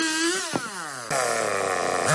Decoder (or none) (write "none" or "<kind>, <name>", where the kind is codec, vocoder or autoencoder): none